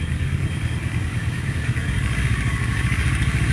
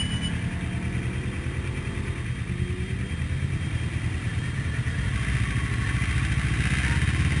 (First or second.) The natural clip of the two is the second